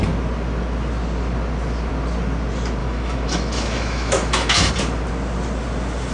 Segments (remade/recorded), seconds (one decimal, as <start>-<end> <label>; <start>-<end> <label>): 0.0-2.8 recorded; 2.8-4.7 remade; 4.7-6.1 recorded